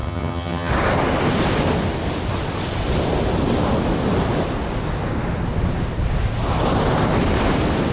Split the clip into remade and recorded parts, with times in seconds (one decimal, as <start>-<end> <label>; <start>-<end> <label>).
0.0-0.7 remade; 0.7-7.9 recorded